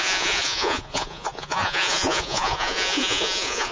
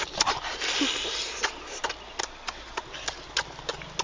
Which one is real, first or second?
second